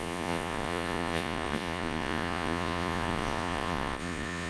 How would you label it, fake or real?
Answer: fake